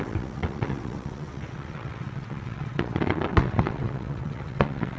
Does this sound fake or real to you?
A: fake